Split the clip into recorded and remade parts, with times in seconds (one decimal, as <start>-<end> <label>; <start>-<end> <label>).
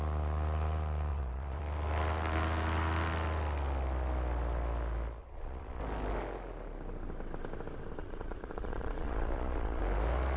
0.0-1.1 recorded; 1.1-1.6 remade; 1.6-5.2 recorded; 5.2-5.8 remade; 5.8-8.0 recorded; 8.0-9.8 remade; 9.8-10.4 recorded